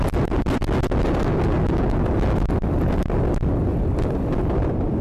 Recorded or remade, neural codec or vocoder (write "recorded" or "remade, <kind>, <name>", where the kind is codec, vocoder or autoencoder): recorded